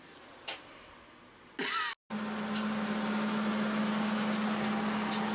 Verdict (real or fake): real